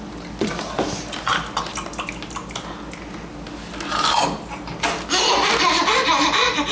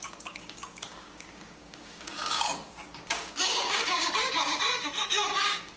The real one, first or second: first